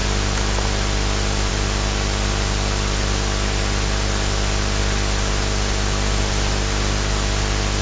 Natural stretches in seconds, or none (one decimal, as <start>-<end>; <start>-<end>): 0.0-7.8